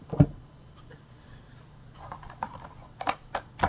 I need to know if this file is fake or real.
real